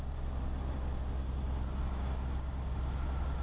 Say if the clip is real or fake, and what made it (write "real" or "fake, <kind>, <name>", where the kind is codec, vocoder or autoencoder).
real